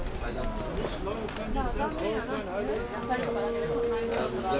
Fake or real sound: real